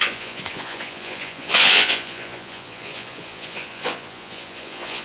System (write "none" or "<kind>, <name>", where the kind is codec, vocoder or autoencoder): vocoder, Vocos